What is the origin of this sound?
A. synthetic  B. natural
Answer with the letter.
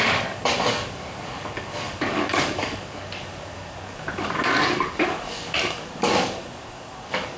A